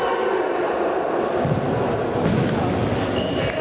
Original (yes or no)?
yes